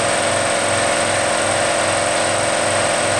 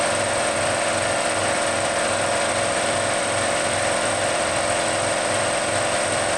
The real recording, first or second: first